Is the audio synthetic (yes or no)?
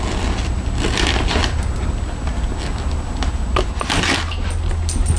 no